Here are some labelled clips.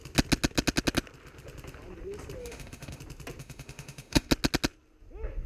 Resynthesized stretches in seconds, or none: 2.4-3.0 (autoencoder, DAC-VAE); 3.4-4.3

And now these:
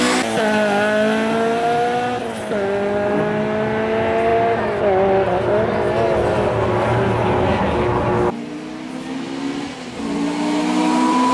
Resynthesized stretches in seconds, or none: none

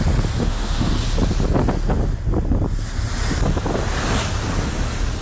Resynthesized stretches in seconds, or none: 0.4-0.9 (autoencoder, DAC-VAE)

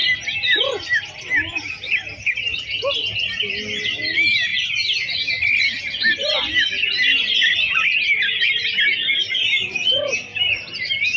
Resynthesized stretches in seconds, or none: none

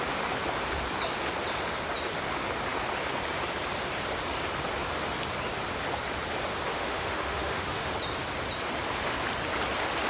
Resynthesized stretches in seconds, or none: 6.7-7.9 (autoencoder, DAC-VAE)

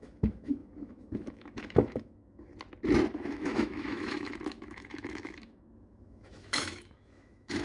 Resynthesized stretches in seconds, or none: 0.0-2.5 (autoencoder, DAC-VAE); 3.1-7.6

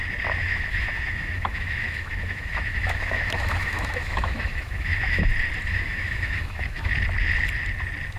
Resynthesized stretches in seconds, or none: 0.4-5.3 (autoencoder, DAC-VAE); 5.7-6.9